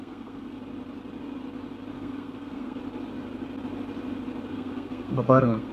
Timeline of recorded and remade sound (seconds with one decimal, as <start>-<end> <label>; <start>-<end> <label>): 0.0-0.6 remade; 0.6-1.9 recorded; 1.9-2.8 remade; 2.8-4.5 recorded; 4.5-5.7 remade